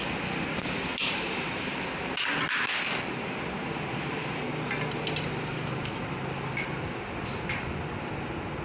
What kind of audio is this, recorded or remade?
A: recorded